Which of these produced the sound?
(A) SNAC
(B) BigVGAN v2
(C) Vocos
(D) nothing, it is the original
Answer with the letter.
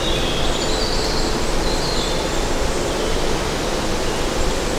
D